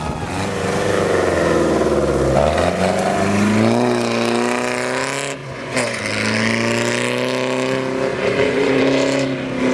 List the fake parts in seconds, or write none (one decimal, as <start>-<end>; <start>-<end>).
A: 5.4-6.0; 8.1-8.8